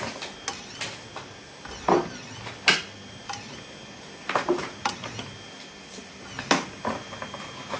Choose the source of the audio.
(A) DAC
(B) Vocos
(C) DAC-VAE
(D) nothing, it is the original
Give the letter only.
D